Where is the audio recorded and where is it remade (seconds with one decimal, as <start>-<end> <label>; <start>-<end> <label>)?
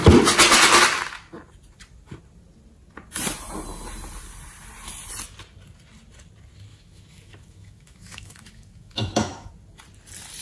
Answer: 0.0-6.7 recorded; 6.7-9.5 remade; 9.5-10.4 recorded